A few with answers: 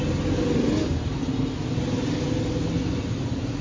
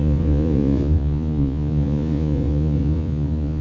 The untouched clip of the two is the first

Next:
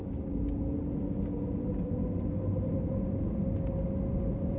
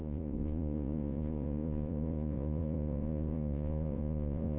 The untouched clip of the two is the first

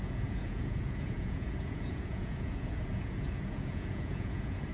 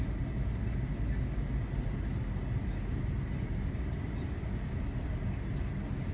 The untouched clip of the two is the second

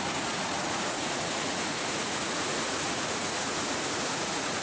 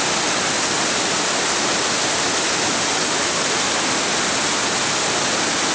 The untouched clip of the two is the second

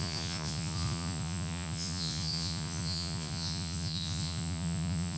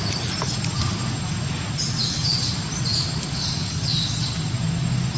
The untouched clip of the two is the second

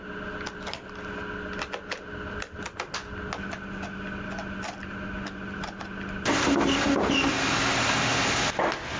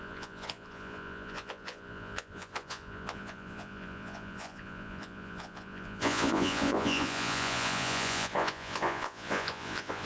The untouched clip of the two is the first